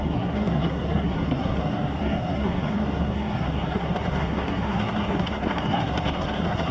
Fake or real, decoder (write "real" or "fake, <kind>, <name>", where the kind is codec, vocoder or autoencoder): fake, codec, SNAC